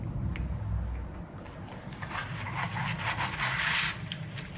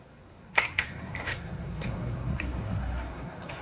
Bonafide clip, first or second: first